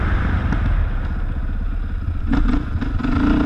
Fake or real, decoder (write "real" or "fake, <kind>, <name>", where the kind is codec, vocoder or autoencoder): real